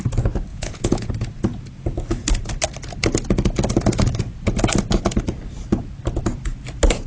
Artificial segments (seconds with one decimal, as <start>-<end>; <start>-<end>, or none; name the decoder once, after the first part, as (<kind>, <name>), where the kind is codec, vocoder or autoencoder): 0.5-1.1 (vocoder, Vocos)